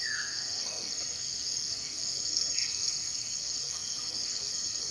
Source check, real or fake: fake